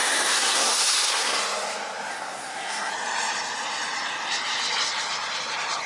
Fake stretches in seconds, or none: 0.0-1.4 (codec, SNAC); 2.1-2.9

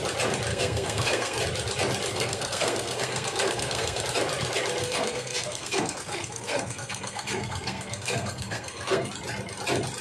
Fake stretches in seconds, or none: 0.5-1.4 (codec, SNAC); 2.1-4.0; 4.8-9.1

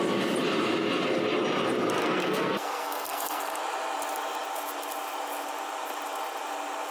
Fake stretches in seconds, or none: 2.0-3.6 (codec, SNAC)